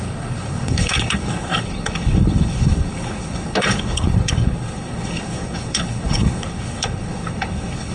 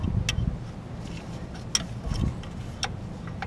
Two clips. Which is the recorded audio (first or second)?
second